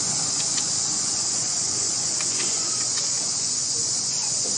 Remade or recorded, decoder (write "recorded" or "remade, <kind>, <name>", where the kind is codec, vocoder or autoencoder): remade, vocoder, Vocos